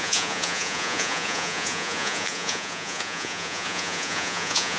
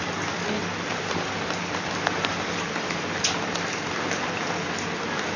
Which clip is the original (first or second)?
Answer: second